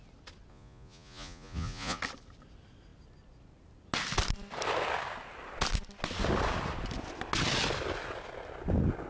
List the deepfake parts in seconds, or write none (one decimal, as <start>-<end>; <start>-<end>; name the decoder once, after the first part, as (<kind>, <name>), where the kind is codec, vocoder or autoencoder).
0.5-2.0 (vocoder, Vocos)